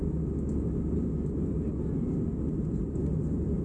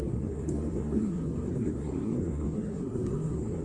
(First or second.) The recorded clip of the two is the first